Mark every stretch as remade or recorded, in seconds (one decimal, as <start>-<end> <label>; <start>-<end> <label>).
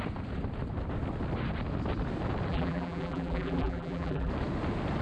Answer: 0.0-2.5 recorded; 2.5-4.3 remade; 4.3-5.0 recorded